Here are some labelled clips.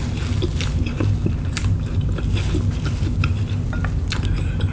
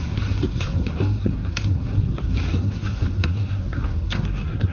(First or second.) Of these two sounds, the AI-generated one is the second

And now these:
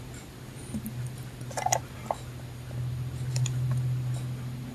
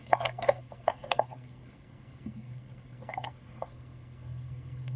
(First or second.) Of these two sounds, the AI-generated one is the second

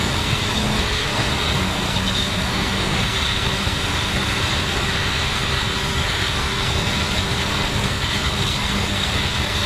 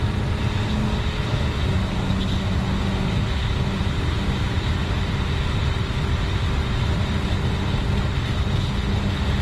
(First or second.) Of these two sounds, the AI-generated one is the first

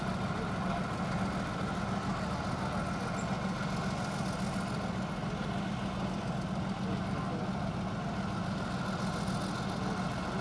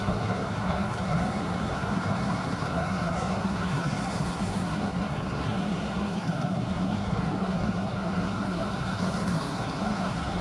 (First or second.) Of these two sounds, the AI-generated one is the second